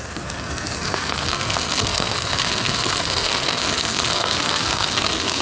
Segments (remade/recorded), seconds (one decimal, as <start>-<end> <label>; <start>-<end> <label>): 0.0-5.4 remade